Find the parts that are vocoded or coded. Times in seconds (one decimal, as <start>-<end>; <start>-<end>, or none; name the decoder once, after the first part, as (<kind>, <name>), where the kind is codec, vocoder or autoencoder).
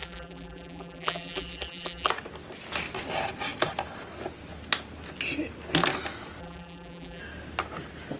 0.0-2.1 (vocoder, BigVGAN v2); 6.4-7.2